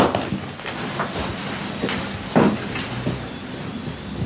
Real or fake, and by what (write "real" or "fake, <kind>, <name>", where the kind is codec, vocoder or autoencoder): real